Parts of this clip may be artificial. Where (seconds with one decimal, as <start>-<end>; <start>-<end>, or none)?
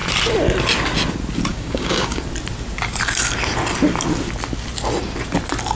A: 1.5-2.2